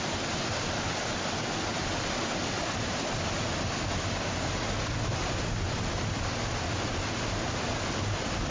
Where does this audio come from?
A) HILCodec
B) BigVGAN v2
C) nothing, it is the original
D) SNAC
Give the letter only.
C